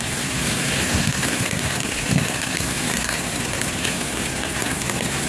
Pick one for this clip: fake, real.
fake